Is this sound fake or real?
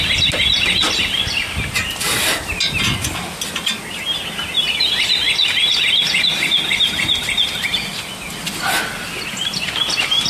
real